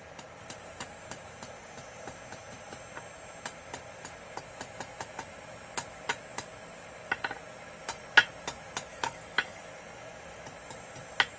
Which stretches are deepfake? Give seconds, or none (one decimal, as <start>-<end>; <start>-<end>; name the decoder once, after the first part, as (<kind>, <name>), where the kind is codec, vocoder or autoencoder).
8.9-9.6 (codec, DAC)